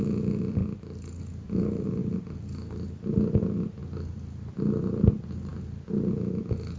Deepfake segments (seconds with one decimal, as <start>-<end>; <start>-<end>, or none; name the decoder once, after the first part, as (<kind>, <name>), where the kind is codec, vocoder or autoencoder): none